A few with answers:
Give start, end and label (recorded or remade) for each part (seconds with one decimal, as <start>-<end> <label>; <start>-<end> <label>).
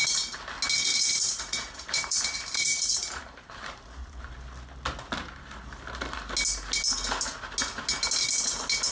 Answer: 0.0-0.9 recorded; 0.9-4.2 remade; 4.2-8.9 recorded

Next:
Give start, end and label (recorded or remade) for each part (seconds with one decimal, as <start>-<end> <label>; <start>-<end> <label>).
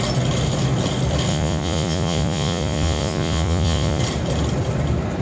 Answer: 0.0-1.3 recorded; 1.3-4.0 remade; 4.0-5.2 recorded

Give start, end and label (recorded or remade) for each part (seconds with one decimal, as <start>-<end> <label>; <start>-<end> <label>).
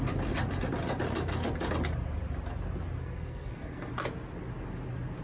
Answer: 0.0-3.0 recorded; 3.0-3.9 remade; 3.9-5.2 recorded